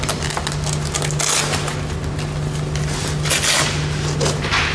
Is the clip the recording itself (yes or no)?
yes